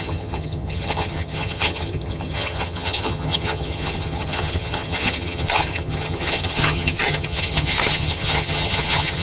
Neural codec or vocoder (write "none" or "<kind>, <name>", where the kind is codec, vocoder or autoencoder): vocoder, HiFi-GAN